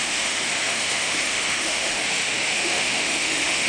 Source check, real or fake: fake